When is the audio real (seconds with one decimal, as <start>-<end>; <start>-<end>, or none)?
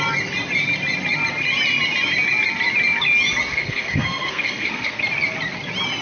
0.0-3.5; 5.0-6.0